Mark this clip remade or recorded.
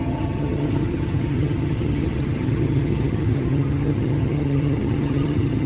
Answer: remade